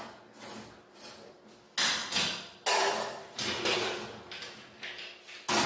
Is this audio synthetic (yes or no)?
no